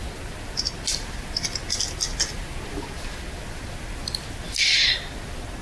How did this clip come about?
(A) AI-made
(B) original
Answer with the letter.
B